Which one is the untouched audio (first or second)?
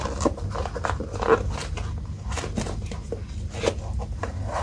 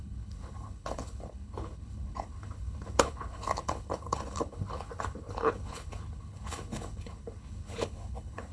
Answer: first